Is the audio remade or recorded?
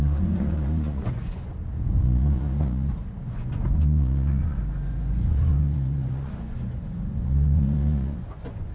remade